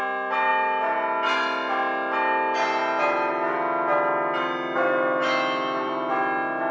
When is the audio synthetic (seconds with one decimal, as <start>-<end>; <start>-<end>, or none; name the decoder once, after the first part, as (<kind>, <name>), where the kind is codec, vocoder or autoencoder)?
none